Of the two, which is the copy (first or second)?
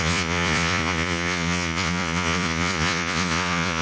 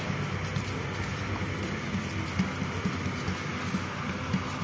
first